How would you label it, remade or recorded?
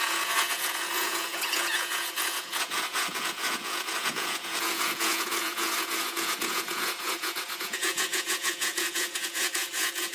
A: remade